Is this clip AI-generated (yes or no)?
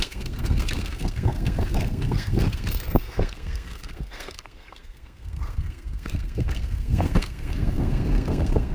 yes